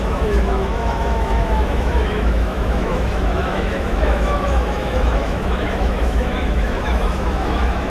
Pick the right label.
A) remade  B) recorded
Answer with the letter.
A